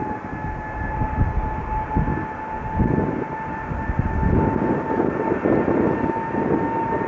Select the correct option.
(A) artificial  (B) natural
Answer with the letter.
B